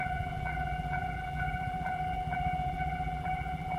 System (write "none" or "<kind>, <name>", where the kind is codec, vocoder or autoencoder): vocoder, BigVGAN v2